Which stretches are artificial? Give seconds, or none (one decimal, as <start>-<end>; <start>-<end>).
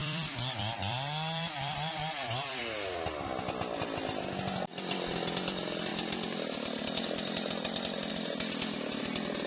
0.0-2.6; 5.9-8.1